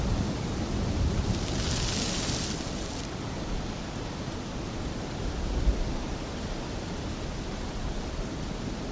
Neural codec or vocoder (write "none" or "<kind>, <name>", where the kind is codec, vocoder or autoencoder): none